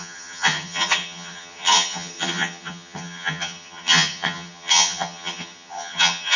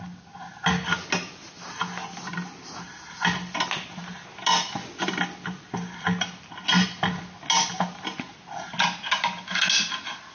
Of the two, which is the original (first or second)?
second